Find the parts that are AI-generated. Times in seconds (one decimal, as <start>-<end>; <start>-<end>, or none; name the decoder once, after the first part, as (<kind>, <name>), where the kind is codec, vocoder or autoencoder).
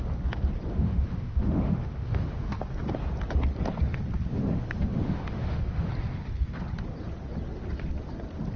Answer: 0.7-2.6 (autoencoder, DAC-VAE); 4.3-5.9